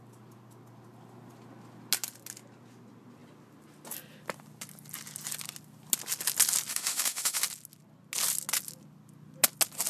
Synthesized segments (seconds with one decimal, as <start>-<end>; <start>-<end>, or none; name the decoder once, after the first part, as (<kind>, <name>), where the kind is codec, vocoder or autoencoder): 6.7-7.4 (autoencoder, DAC-VAE)